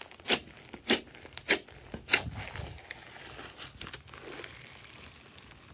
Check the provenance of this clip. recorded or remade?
recorded